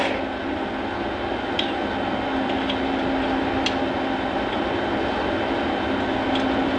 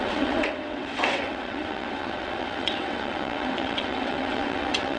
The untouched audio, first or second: first